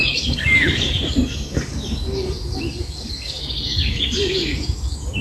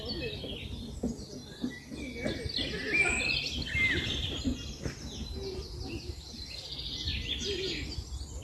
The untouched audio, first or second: second